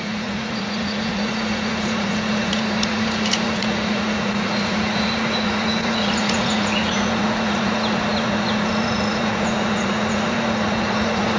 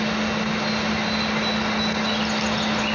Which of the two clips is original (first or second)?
second